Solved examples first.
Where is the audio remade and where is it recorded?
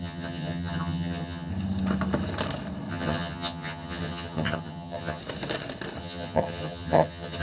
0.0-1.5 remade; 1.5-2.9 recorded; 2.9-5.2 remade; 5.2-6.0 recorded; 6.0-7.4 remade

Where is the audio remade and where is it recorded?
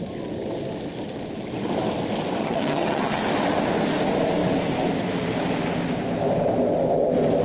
0.0-2.4 recorded; 2.4-3.2 remade; 3.2-7.4 recorded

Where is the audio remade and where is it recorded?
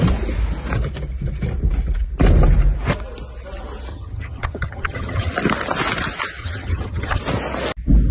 0.0-3.9 recorded; 3.9-5.3 remade; 5.3-6.4 recorded; 6.4-7.2 remade; 7.2-8.1 recorded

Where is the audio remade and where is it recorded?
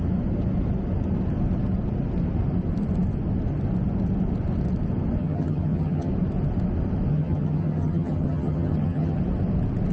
0.0-5.2 recorded; 5.2-6.1 remade; 6.1-7.1 recorded; 7.1-9.2 remade; 9.2-9.9 recorded